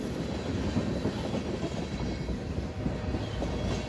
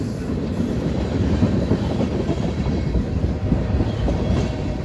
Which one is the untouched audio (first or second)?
first